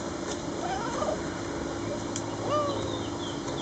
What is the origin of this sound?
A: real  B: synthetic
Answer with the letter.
A